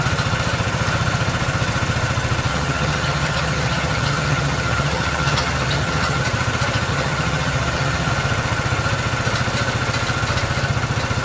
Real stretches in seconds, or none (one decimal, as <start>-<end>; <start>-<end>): 0.0-2.5; 6.2-6.9; 8.1-11.2